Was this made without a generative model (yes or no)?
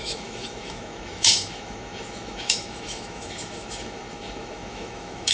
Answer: no